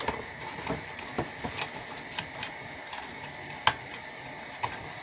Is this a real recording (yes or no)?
yes